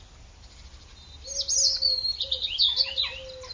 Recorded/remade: recorded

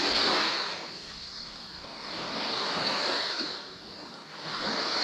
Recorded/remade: remade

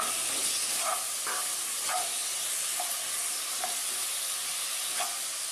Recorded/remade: recorded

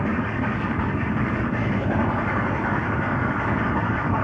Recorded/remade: remade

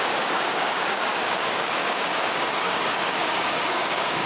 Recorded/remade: remade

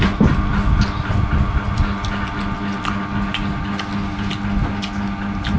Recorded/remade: recorded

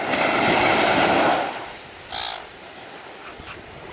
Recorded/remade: recorded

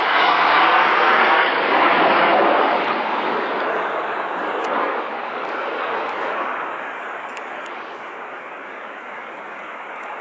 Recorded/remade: remade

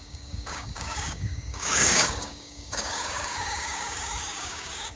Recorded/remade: remade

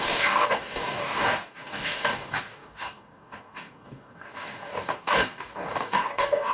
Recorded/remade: remade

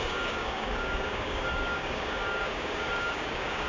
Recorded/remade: remade